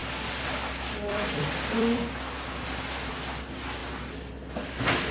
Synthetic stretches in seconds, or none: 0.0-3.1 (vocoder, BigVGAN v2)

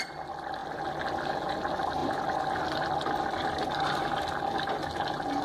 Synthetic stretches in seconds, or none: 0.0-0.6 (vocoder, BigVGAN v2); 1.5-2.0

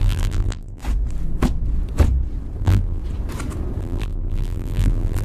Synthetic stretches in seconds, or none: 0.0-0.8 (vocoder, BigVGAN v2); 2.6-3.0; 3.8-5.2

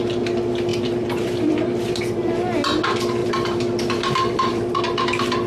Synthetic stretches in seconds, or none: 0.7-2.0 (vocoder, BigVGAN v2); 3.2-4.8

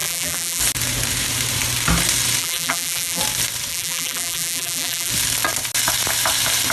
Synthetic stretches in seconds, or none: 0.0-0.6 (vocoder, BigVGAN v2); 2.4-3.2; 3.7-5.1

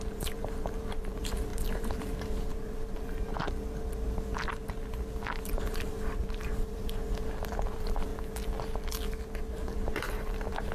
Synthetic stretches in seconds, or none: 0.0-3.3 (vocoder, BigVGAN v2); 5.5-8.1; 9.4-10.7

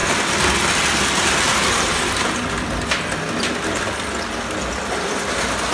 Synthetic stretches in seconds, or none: 3.4-5.7 (vocoder, BigVGAN v2)

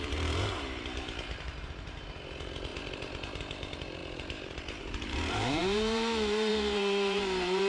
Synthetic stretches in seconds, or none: 0.0-7.7 (vocoder, BigVGAN v2)